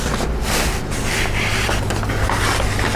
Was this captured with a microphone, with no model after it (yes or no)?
yes